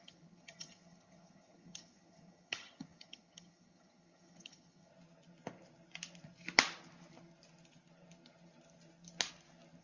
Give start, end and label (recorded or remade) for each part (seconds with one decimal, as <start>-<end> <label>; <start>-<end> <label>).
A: 0.0-4.9 remade; 4.9-9.8 recorded